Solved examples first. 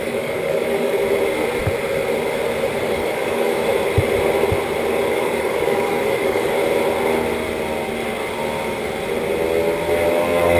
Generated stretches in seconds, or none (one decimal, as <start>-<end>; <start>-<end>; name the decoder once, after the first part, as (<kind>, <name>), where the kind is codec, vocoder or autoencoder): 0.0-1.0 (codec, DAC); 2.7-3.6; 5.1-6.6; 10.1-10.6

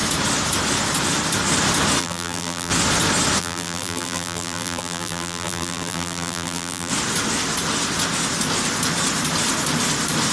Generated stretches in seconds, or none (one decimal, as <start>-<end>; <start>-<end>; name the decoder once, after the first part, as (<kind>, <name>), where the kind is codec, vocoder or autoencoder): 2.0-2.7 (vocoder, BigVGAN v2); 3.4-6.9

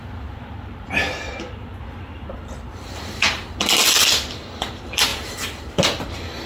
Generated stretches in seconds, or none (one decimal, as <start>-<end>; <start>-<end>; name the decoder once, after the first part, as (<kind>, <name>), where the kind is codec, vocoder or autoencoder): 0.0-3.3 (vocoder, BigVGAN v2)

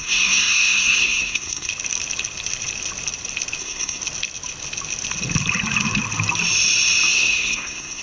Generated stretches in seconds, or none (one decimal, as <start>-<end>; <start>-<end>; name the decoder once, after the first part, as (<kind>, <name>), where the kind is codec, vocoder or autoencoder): 0.0-1.7 (codec, SNAC); 3.6-4.0; 7.1-8.0

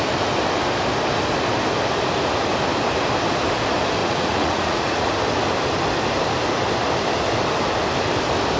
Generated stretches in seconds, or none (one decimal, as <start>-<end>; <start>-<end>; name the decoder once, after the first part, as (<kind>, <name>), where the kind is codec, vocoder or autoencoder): 4.0-5.1 (vocoder, Vocos)

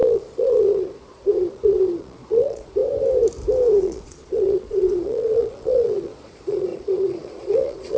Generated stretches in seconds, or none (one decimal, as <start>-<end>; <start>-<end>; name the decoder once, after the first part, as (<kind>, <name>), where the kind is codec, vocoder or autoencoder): 0.0-2.8 (vocoder, Vocos); 3.8-8.0

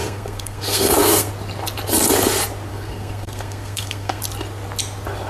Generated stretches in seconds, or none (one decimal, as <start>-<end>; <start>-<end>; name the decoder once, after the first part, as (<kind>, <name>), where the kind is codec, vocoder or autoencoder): 0.0-1.3 (codec, SNAC); 2.7-4.2